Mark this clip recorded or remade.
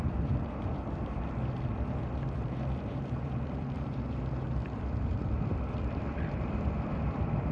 remade